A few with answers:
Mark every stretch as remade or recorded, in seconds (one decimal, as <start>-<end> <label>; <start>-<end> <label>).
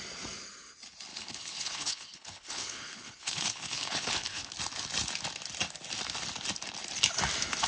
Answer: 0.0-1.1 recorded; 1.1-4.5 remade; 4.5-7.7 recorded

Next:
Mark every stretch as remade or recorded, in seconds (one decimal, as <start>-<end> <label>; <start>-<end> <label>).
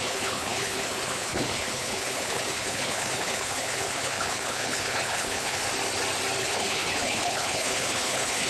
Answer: 0.0-5.6 remade; 5.6-6.4 recorded; 6.4-8.5 remade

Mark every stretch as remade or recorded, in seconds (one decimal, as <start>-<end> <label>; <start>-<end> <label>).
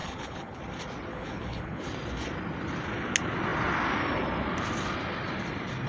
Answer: 0.0-0.6 remade; 0.6-1.1 recorded; 1.1-1.9 remade; 1.9-5.9 recorded